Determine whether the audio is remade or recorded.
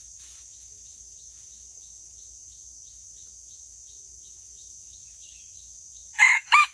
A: remade